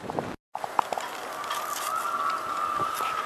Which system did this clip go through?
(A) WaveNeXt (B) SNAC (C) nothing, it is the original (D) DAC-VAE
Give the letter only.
C